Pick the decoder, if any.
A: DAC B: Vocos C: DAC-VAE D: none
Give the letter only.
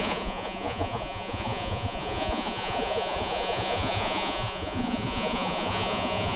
B